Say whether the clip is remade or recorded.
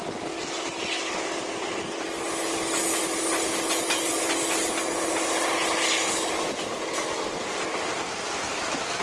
recorded